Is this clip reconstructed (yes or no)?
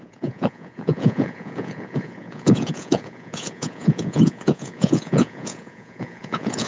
yes